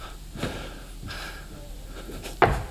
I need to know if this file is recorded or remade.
recorded